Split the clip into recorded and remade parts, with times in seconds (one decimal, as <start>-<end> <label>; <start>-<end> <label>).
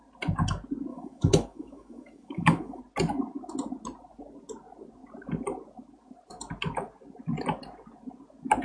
0.0-0.9 recorded; 0.9-2.8 remade; 2.8-8.6 recorded